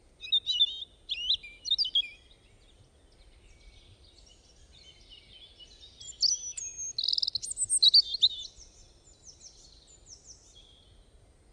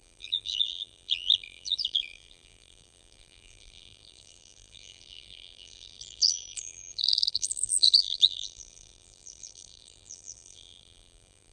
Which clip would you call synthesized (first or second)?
second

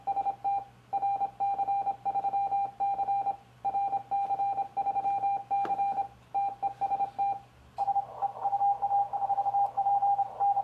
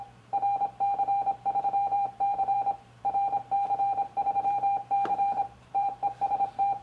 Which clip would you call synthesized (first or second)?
second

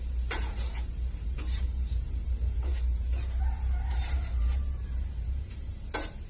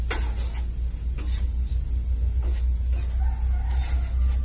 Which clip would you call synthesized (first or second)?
first